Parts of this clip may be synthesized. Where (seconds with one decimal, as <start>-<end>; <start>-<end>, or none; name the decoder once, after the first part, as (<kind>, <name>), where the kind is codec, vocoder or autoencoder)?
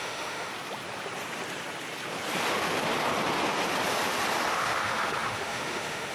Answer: 0.0-0.5 (autoencoder, DAC-VAE); 2.5-2.9; 4.5-6.1